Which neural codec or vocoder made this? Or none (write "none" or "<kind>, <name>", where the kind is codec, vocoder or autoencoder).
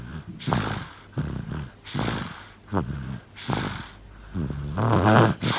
none